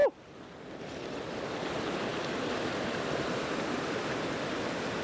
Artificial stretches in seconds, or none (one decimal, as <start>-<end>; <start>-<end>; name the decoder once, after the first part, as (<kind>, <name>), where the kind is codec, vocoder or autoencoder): none

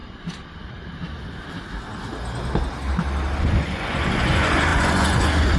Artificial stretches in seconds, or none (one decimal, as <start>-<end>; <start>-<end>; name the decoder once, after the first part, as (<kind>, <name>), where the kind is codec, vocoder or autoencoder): 3.4-5.6 (vocoder, Vocos)